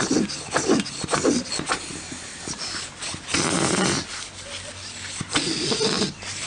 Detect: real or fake real